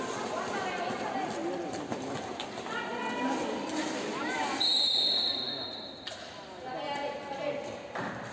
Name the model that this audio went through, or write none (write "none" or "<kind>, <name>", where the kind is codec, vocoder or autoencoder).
none